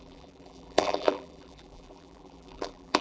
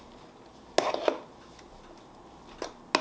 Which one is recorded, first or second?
second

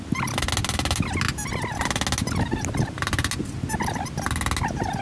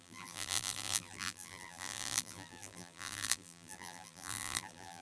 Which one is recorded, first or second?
first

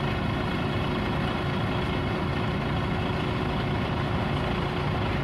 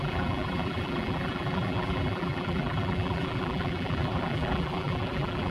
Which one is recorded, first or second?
first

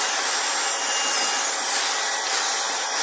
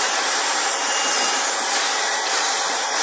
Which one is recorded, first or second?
first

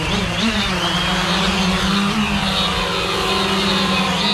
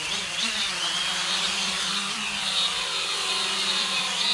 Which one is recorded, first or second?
first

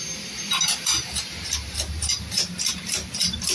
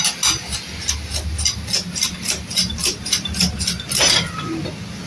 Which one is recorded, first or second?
second